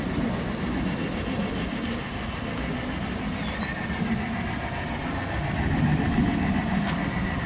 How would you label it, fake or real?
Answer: real